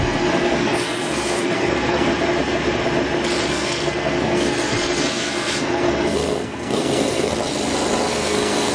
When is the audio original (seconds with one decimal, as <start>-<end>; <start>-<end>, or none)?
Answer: 2.1-3.5; 7.3-8.1